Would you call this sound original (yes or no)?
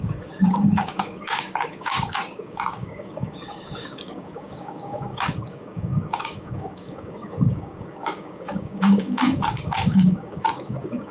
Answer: no